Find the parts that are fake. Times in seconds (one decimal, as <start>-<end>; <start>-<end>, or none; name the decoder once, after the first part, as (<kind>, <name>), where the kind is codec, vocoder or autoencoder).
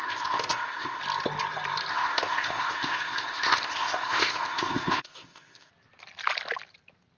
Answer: 0.0-1.0 (codec, ZipCodec); 1.9-5.7